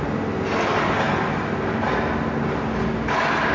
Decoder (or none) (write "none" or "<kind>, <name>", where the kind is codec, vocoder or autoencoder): none